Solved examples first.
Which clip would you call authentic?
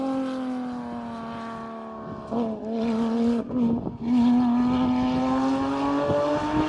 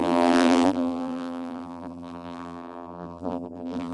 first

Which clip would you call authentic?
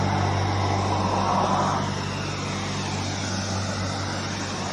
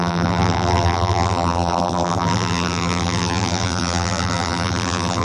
first